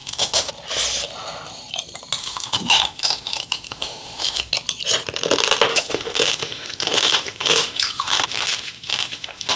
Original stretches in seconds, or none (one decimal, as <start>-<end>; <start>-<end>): 0.5-2.2; 4.5-5.7